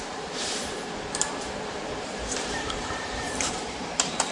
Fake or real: fake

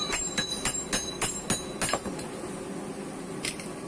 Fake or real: real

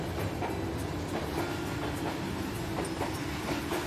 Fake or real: real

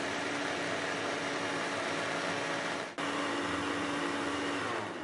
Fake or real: real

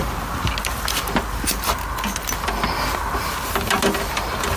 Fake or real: real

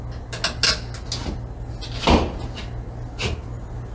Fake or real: real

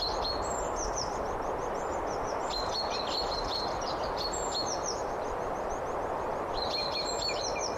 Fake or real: fake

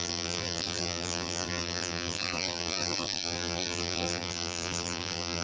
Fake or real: fake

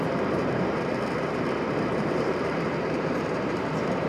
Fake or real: fake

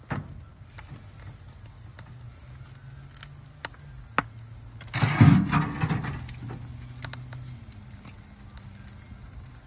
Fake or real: real